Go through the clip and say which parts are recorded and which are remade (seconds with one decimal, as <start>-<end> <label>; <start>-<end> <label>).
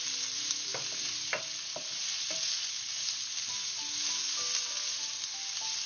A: 0.0-5.9 recorded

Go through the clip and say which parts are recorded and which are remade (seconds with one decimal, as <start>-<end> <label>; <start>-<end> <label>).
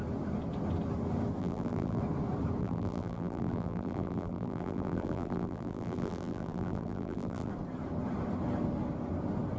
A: 0.0-1.4 recorded; 1.4-2.0 remade; 2.0-2.6 recorded; 2.6-7.5 remade; 7.5-9.6 recorded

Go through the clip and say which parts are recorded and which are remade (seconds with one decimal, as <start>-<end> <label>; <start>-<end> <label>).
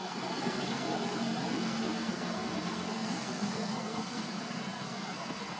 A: 0.0-5.6 remade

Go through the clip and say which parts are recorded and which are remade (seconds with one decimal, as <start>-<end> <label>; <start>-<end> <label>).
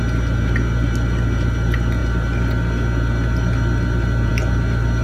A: 0.0-5.0 recorded